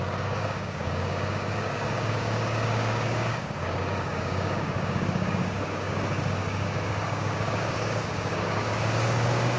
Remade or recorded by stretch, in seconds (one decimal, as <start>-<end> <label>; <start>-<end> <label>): 0.0-9.6 remade